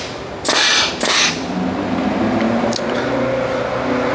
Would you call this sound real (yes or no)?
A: yes